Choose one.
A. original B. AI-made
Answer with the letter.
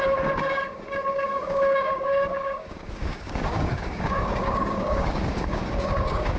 B